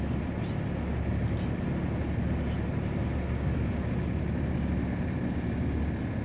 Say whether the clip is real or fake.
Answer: real